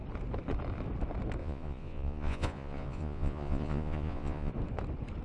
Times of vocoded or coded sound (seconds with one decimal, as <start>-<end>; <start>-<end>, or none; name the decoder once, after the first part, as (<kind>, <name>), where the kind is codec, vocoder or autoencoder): 1.4-4.5 (vocoder, Vocos)